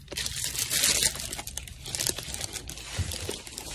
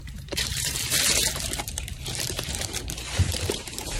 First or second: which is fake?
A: second